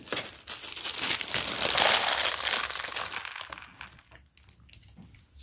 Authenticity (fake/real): real